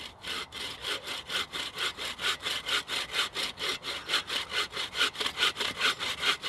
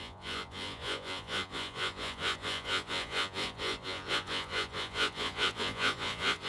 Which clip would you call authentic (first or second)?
first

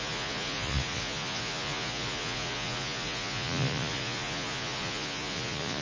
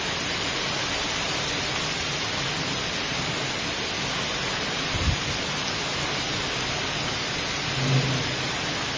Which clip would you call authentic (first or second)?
second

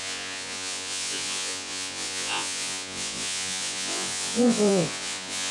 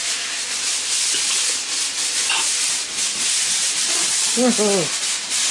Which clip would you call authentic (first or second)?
second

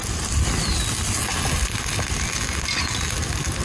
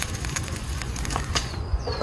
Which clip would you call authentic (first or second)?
first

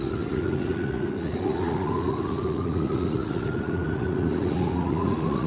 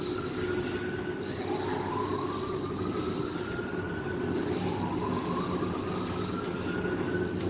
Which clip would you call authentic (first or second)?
second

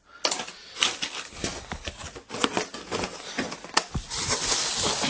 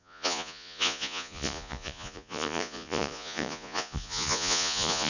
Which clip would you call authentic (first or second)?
first